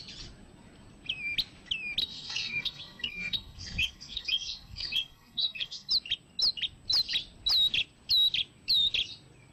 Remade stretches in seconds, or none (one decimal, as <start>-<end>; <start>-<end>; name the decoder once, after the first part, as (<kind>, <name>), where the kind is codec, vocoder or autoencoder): 2.0-5.9 (codec, SNAC)